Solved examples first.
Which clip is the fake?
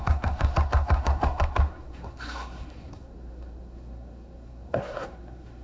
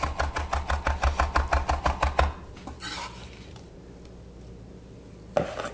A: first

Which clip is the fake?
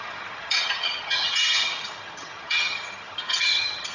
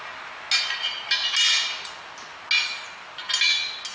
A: first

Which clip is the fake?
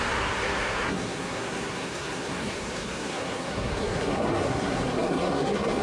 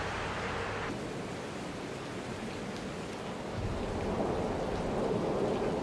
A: first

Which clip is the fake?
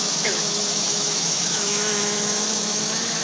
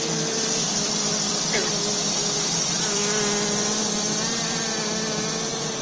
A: first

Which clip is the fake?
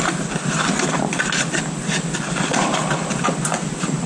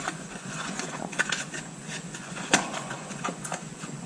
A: second